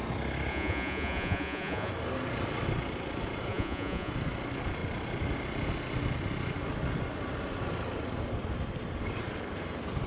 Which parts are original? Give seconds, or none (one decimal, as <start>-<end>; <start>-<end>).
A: 0.0-0.5; 1.9-3.5; 4.1-10.1